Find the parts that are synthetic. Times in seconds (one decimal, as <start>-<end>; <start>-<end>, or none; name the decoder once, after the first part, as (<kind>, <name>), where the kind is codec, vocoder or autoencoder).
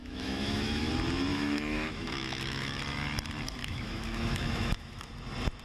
0.0-0.9 (autoencoder, DAC-VAE); 1.3-2.8; 3.6-5.1